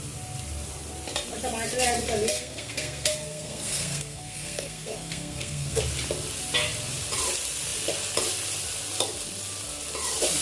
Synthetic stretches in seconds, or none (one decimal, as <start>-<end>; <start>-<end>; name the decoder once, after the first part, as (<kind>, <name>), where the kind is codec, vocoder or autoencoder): 2.3-5.8 (codec, SNAC)